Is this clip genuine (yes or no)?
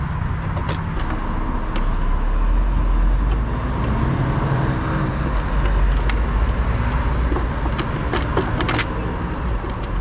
yes